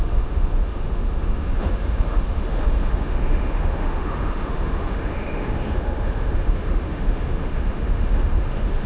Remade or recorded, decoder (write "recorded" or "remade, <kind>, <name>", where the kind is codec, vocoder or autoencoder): remade, autoencoder, DAC-VAE